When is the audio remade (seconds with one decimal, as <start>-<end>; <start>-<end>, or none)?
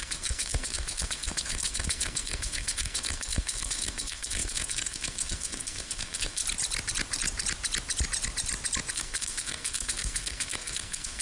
0.0-6.4; 8.9-11.2